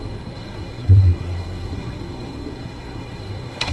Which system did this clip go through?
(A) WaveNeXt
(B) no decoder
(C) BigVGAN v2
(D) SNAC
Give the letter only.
D